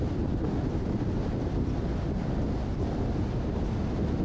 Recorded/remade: recorded